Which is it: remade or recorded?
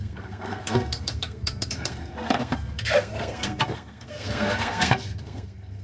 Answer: remade